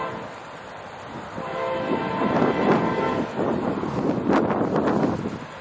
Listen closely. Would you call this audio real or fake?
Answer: real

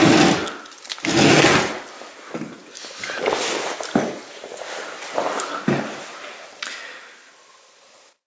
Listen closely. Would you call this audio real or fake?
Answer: real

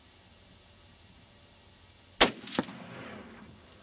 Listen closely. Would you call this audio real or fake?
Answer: real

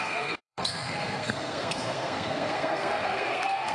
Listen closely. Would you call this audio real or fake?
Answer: fake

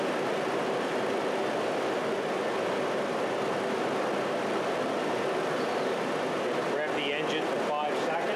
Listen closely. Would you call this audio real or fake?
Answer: real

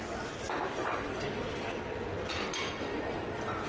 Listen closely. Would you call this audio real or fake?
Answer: real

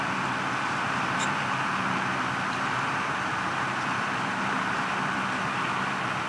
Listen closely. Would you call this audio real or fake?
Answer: fake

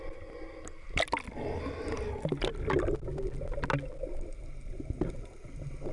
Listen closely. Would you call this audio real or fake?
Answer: real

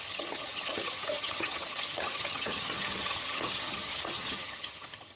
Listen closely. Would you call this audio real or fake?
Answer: fake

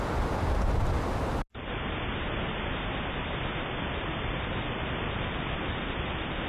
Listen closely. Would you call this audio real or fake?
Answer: real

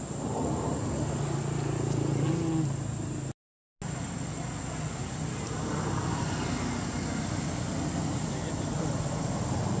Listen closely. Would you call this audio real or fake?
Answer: real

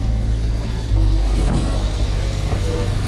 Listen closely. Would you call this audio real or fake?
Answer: fake